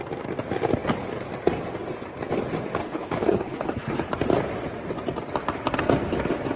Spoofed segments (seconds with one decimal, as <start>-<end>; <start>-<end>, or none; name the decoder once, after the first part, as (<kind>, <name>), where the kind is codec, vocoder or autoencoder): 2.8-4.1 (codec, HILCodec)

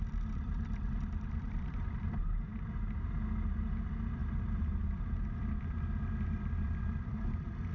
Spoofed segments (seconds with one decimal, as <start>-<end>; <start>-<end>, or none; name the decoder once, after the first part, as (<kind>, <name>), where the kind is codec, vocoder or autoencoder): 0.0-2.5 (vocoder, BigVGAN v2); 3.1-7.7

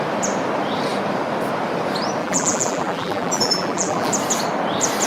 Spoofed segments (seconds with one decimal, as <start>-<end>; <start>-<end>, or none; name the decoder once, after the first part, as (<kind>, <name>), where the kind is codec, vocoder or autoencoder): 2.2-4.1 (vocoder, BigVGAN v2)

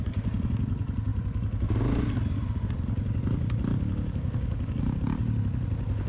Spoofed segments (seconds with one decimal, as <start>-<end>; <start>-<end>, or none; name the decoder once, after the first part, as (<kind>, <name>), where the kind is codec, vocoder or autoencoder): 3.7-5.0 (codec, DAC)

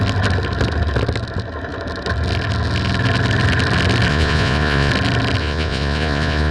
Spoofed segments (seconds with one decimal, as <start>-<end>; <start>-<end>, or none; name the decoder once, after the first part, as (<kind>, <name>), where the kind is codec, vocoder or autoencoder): 4.1-4.9 (vocoder, Vocos); 5.4-6.5

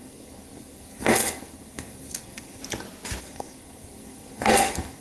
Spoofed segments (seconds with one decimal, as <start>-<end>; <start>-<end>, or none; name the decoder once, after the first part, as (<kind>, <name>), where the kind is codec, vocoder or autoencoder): 0.0-2.6 (codec, SNAC); 3.2-5.0

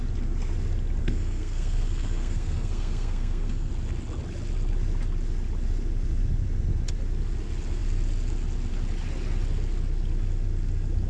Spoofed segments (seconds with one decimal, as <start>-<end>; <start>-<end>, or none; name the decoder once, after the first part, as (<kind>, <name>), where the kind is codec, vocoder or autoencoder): 1.0-3.7 (codec, SNAC)